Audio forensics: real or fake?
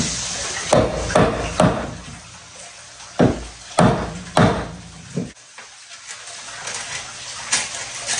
real